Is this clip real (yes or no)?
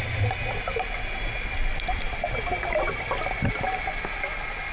yes